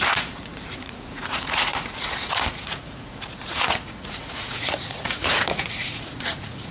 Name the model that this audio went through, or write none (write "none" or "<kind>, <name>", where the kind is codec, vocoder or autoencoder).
vocoder, Vocos